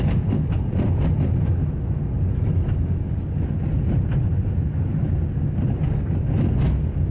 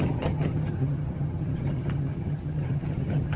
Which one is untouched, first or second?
first